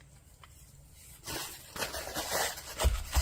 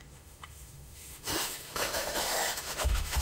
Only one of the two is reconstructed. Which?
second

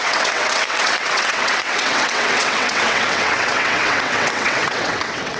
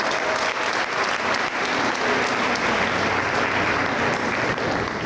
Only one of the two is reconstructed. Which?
first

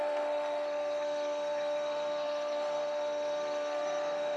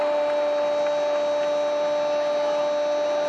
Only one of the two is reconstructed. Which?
first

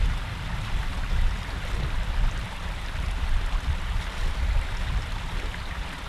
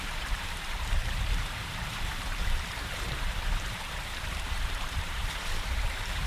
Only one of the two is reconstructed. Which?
second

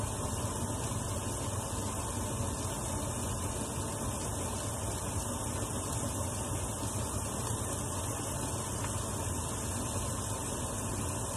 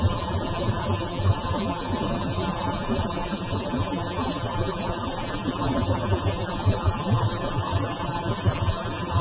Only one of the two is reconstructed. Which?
second